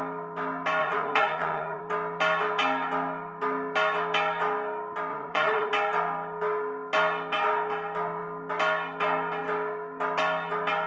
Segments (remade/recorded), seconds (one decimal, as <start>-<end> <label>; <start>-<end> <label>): 0.0-0.8 recorded; 0.8-1.8 remade; 1.8-5.1 recorded; 5.1-5.7 remade; 5.7-10.9 recorded